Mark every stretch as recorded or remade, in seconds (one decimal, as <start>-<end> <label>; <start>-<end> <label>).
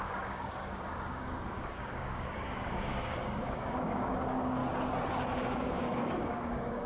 0.0-4.6 remade; 4.6-5.3 recorded; 5.3-6.9 remade